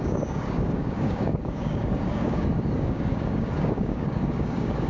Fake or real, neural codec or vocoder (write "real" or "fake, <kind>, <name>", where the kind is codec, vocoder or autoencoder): fake, codec, DAC